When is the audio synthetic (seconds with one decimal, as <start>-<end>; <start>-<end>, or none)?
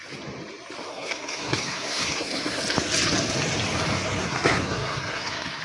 0.9-2.6; 4.2-5.6